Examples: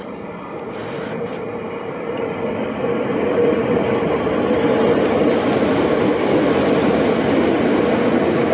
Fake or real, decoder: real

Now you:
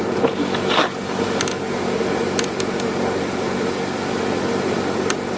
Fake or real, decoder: real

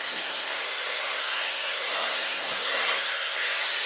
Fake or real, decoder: fake, codec, SNAC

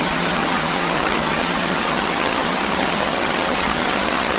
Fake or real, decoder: fake, vocoder, HiFi-GAN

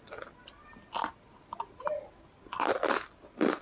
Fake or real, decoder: real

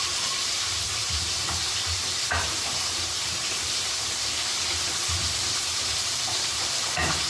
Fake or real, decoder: fake, vocoder, BigVGAN v2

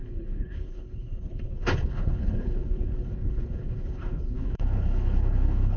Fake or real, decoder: fake, codec, HILCodec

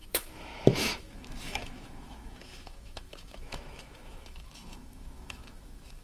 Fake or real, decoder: fake, autoencoder, DAC-VAE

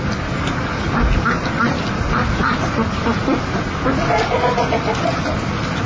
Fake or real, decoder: real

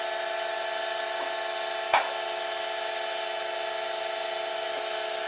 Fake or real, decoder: real